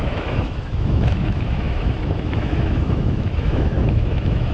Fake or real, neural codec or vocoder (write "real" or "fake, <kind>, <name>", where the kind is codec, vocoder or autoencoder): fake, autoencoder, DAC-VAE